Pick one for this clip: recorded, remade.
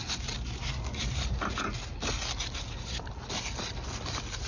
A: recorded